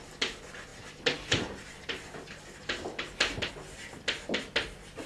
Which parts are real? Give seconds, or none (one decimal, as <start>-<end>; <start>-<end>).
0.0-5.1